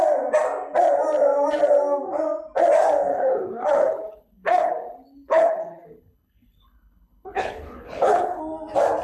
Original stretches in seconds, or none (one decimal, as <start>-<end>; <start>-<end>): 0.0-3.1; 8.4-9.0